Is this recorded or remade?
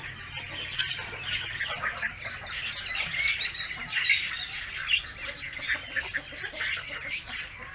recorded